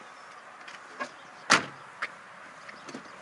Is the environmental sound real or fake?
real